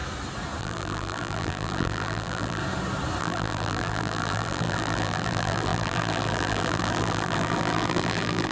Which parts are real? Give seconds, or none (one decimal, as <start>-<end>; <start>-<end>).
0.0-0.6; 2.6-3.2